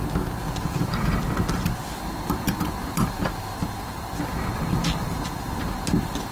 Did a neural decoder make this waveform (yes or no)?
no